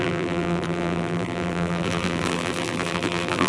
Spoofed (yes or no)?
yes